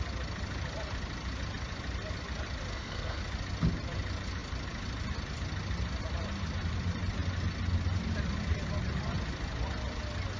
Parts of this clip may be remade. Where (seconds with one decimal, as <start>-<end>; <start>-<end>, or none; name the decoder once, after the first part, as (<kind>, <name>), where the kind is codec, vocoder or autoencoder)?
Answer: 2.7-3.2 (codec, SNAC)